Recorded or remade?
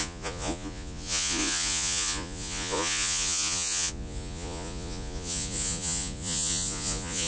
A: remade